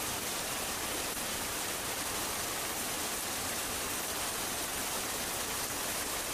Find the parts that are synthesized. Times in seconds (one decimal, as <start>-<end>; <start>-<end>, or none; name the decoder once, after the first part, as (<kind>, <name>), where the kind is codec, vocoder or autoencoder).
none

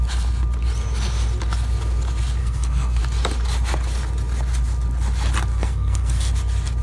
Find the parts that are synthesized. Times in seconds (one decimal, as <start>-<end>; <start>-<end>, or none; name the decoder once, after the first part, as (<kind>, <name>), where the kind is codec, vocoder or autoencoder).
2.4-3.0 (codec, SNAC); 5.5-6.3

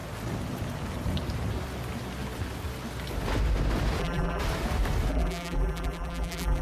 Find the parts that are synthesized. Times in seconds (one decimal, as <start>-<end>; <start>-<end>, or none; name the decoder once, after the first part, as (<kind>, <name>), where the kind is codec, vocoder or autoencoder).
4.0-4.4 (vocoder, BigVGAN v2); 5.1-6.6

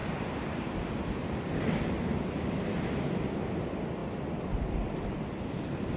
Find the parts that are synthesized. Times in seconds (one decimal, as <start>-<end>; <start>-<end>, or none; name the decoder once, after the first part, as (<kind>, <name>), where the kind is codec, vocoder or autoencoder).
none